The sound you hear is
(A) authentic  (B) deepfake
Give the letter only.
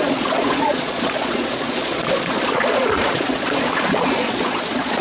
B